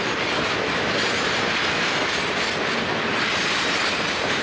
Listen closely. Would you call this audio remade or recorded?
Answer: recorded